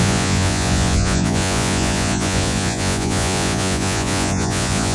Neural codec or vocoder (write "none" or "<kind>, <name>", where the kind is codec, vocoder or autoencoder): vocoder, Vocos